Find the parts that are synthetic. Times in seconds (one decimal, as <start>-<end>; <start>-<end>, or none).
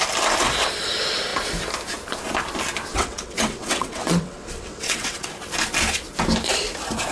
2.9-5.3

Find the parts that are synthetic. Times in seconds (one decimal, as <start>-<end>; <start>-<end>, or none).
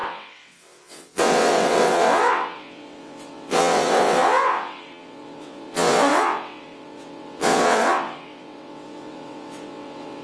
0.0-10.2